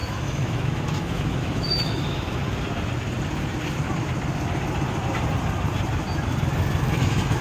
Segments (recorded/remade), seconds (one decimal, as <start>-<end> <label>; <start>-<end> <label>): 0.0-2.4 remade; 2.4-6.8 recorded; 6.8-7.4 remade

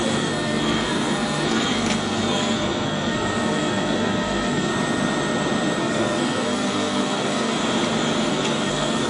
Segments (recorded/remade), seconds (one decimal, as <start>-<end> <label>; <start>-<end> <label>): 0.0-4.7 remade; 4.7-5.8 recorded; 5.8-7.6 remade; 7.6-8.3 recorded; 8.3-9.1 remade

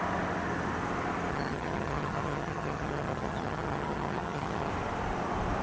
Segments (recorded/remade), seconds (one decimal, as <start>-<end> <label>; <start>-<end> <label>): 0.0-1.3 recorded; 1.3-4.7 remade; 4.7-5.6 recorded

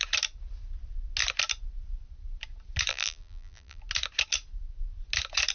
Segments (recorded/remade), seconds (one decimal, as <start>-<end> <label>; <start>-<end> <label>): 0.0-2.9 recorded; 2.9-3.8 remade; 3.8-5.5 recorded

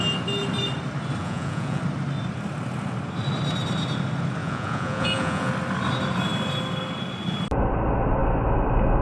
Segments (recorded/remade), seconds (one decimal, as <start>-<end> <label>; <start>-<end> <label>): 0.0-1.2 recorded; 1.2-1.8 remade; 1.8-4.4 recorded; 4.4-5.5 remade; 5.5-9.0 recorded

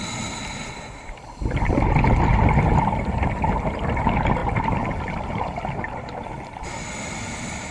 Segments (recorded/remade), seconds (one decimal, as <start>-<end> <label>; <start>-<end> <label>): 0.0-7.7 recorded